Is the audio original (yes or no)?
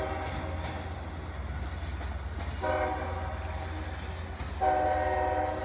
yes